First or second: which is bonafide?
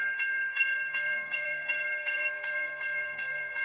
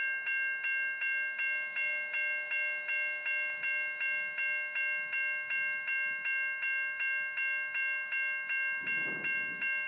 second